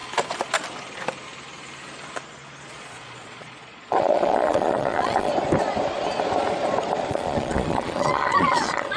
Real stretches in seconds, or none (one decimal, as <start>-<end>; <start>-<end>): 0.0-2.7; 5.3-7.1